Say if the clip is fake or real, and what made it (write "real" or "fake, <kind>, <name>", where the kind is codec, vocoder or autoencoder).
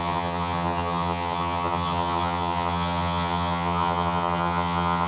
fake, vocoder, HiFi-GAN